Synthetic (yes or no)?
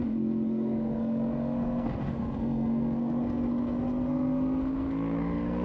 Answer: yes